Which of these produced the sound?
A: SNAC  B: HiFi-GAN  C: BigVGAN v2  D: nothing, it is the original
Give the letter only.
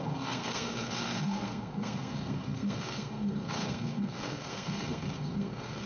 A